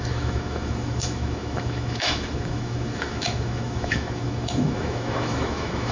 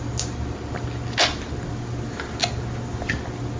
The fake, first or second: first